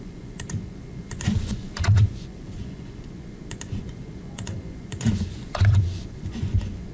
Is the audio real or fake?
fake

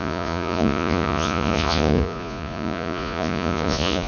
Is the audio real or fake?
fake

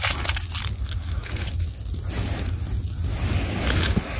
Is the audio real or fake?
real